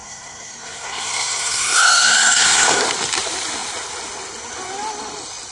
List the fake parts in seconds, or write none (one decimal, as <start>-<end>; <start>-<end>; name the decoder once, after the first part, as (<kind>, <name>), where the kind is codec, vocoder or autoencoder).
0.0-2.8 (codec, SNAC)